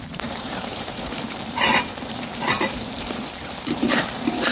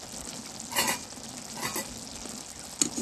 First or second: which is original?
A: second